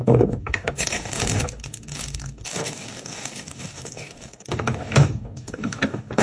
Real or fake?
fake